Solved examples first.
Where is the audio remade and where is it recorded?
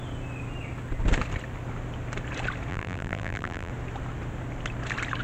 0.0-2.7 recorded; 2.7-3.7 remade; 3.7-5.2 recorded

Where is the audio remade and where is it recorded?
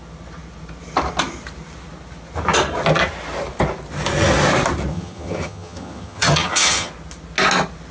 0.0-4.9 recorded; 4.9-6.9 remade; 6.9-7.9 recorded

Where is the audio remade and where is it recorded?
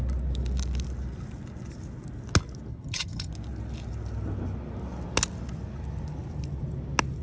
0.0-2.7 recorded; 2.7-3.3 remade; 3.3-7.2 recorded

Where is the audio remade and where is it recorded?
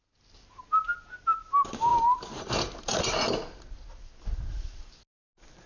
0.0-5.7 recorded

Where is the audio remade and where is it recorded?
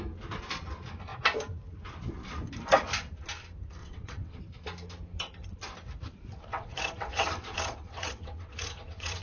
0.0-3.8 recorded; 3.8-4.4 remade; 4.4-6.5 recorded; 6.5-9.2 remade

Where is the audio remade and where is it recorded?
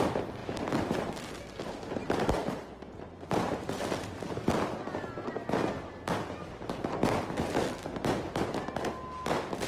0.0-2.4 recorded; 2.4-3.8 remade; 3.8-9.7 recorded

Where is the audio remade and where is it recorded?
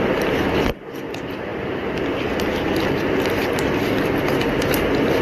0.0-5.2 recorded